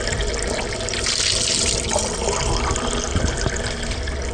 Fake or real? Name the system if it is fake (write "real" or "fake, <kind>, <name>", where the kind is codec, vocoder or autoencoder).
real